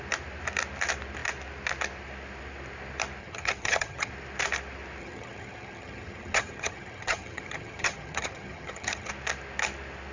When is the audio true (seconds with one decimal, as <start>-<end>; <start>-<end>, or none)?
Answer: 0.0-3.2; 4.1-5.0; 9.1-10.1